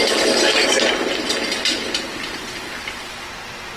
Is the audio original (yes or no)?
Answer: yes